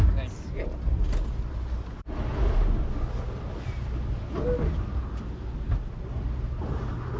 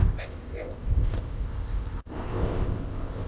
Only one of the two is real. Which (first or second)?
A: first